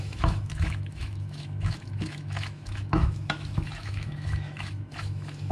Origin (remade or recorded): remade